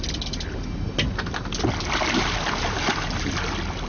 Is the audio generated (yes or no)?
no